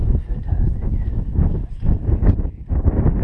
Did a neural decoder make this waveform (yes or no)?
no